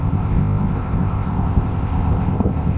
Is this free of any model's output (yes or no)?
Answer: no